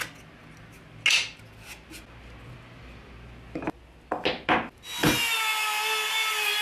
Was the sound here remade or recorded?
recorded